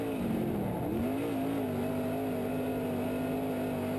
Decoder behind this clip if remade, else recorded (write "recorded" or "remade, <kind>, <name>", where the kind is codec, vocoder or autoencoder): recorded